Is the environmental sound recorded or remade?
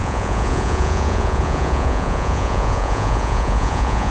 remade